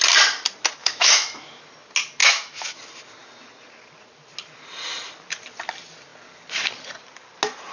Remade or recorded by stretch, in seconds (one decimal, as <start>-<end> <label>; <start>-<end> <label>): 0.0-0.8 recorded; 0.8-1.6 remade; 1.6-2.2 recorded; 2.2-2.8 remade; 2.8-7.7 recorded